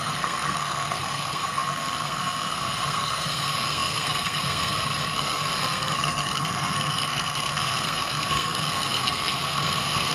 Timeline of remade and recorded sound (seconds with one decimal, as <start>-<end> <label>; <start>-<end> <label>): 0.0-10.1 remade